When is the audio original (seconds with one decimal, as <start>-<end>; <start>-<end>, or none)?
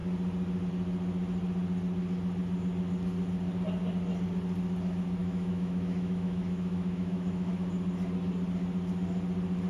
0.0-5.2; 7.5-9.7